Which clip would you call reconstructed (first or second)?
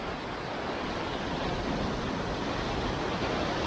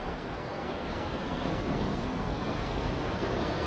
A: second